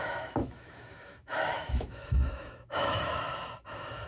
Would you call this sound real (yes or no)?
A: no